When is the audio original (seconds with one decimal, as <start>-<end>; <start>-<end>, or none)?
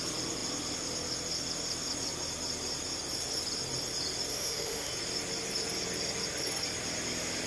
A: 0.0-4.3; 4.9-7.5